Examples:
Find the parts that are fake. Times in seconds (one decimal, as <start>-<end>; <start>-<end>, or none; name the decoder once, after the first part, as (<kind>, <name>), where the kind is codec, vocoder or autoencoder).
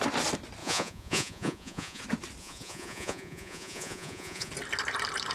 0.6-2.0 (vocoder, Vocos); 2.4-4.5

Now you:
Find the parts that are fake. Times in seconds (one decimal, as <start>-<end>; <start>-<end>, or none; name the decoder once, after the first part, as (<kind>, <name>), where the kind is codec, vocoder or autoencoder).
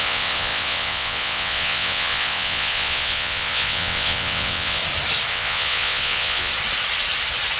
0.0-4.8 (vocoder, WaveNeXt); 5.3-6.5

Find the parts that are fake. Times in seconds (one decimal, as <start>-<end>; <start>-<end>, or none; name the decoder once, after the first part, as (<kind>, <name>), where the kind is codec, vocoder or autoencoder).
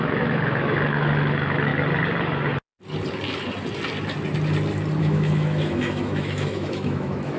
0.0-1.7 (autoencoder, DAC-VAE); 5.0-7.4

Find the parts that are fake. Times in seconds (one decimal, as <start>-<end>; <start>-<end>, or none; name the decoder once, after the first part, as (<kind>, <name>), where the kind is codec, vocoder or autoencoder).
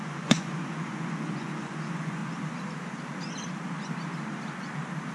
0.0-2.2 (vocoder, Vocos)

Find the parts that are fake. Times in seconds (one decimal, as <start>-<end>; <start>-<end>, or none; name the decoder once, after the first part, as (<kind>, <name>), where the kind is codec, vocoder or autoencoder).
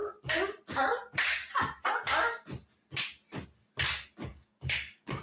4.3-5.2 (codec, DAC)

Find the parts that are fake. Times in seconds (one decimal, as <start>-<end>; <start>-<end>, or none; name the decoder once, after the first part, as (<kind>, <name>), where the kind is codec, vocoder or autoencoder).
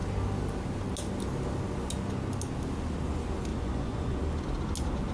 3.5-4.2 (vocoder, Vocos)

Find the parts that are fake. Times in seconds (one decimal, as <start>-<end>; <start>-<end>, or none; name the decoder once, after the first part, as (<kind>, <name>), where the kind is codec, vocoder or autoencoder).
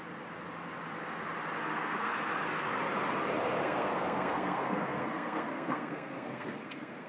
1.6-2.1 (codec, SNAC); 3.6-7.1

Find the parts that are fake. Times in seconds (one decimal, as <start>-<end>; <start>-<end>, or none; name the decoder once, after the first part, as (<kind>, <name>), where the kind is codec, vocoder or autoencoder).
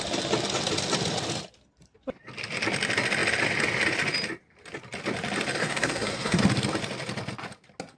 5.6-6.4 (codec, SNAC)